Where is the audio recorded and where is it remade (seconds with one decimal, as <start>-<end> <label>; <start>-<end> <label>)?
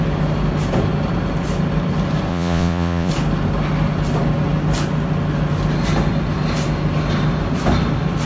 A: 0.0-2.3 recorded; 2.3-3.1 remade; 3.1-8.3 recorded